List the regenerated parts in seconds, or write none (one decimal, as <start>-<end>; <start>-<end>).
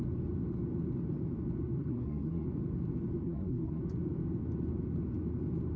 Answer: 1.8-2.5; 3.2-3.8